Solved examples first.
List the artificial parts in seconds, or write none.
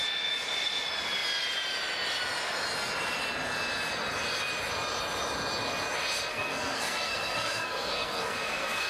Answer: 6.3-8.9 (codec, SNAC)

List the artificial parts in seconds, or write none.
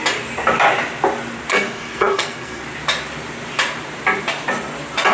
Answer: 1.5-2.6 (codec, SNAC)